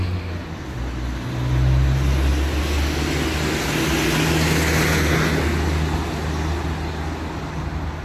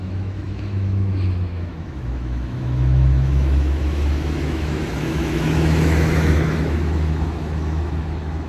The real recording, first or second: first